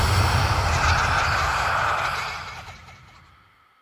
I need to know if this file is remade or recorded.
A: remade